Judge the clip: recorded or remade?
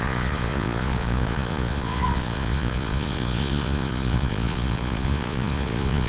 remade